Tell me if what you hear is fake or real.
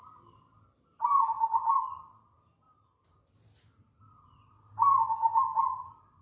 real